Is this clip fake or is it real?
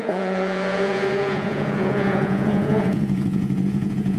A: fake